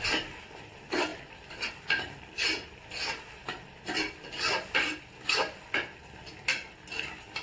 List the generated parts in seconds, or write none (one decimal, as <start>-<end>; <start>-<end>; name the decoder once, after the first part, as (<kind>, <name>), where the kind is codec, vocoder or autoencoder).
none